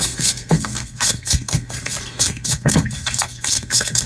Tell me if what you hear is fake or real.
fake